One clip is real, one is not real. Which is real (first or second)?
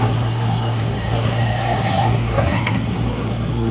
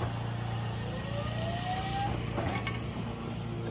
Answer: second